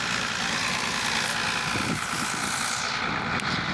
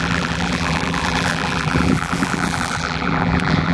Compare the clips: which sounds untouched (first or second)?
first